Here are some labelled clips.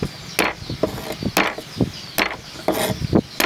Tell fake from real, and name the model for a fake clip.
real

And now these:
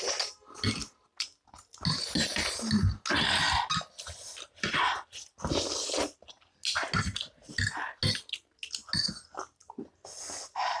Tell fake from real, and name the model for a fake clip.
real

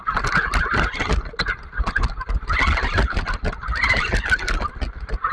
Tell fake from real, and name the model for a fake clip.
real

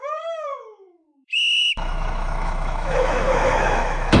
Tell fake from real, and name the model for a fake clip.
fake, autoencoder, DAC-VAE